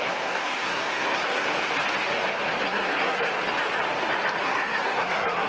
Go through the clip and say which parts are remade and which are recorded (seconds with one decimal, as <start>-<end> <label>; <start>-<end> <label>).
0.0-1.5 remade; 1.5-2.6 recorded; 2.6-3.3 remade; 3.3-4.4 recorded; 4.4-5.5 remade